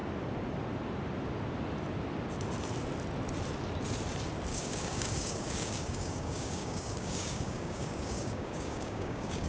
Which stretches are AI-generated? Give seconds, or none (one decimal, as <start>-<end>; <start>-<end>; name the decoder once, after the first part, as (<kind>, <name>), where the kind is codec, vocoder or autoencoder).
4.5-9.5 (codec, DAC)